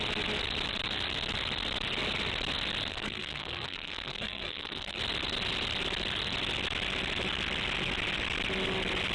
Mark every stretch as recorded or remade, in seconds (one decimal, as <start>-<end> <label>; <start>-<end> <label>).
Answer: 0.0-2.9 recorded; 2.9-5.0 remade; 5.0-9.1 recorded